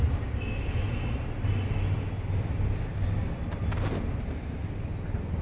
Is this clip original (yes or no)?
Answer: yes